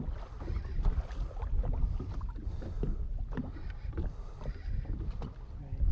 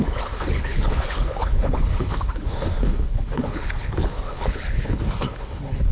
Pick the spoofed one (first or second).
second